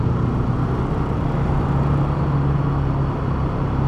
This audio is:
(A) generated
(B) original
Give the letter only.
B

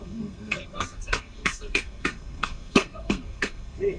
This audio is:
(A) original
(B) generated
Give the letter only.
B